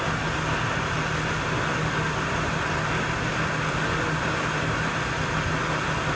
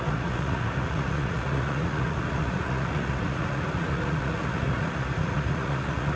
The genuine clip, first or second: first